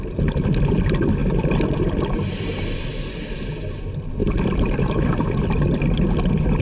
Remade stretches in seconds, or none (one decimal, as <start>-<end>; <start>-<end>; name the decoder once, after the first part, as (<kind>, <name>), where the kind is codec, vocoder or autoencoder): 4.2-5.4 (vocoder, BigVGAN v2)